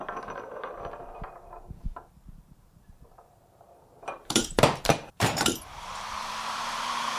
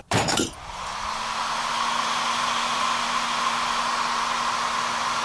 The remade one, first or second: first